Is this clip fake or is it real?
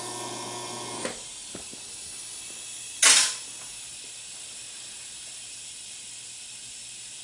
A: real